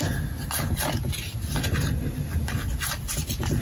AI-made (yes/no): no